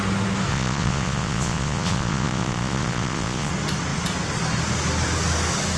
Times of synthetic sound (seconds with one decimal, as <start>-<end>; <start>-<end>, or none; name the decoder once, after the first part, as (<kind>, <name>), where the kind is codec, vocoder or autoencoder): 0.5-3.5 (vocoder, Vocos)